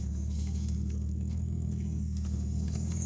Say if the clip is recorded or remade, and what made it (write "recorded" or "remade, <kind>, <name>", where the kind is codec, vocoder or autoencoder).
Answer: remade, codec, SNAC